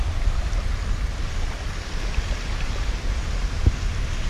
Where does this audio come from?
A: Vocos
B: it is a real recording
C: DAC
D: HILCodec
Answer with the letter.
B